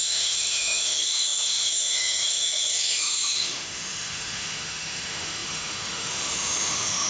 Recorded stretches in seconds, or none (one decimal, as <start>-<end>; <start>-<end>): none